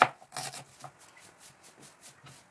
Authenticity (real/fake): real